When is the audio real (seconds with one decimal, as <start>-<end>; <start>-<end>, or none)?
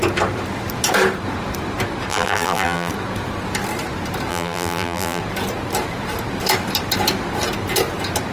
0.0-2.1; 2.9-4.3; 5.2-8.3